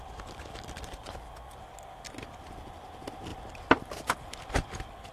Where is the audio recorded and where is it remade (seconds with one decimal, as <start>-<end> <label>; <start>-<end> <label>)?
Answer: 0.0-5.1 recorded